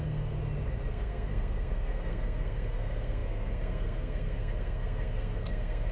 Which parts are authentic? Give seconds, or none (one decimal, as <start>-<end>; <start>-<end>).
0.4-0.9